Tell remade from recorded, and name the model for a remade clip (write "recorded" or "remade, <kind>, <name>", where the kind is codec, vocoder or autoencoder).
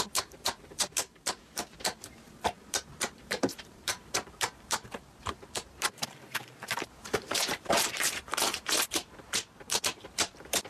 remade, vocoder, BigVGAN v2